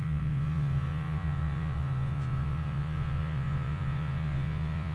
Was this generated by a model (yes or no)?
yes